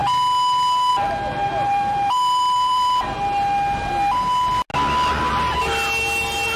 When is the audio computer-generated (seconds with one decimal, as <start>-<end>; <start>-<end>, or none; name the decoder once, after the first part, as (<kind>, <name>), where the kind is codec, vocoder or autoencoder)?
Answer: 1.5-3.1 (vocoder, BigVGAN v2)

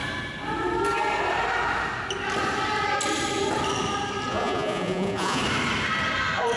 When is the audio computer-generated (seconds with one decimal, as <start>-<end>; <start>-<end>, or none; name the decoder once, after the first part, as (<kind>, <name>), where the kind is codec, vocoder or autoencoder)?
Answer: 4.3-5.4 (vocoder, Vocos)

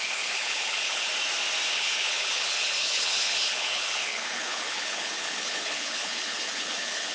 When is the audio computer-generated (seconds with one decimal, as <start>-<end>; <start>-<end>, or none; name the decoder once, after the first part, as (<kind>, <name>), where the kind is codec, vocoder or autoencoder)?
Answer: 0.0-1.1 (codec, HILCodec); 1.7-7.1

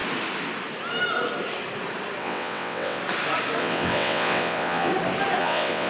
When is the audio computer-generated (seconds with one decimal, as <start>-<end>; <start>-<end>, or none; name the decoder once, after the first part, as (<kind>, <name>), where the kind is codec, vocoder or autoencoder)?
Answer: 2.2-3.0 (vocoder, WaveNeXt); 3.6-4.9; 5.4-5.9

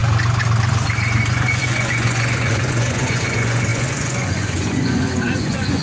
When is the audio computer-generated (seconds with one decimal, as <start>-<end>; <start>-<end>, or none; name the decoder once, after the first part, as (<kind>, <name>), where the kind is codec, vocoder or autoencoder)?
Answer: 1.3-5.8 (vocoder, Vocos)

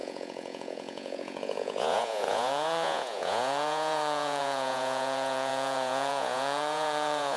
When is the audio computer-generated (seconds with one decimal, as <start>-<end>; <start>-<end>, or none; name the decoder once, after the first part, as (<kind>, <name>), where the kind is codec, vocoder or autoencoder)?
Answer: 0.0-7.4 (vocoder, Vocos)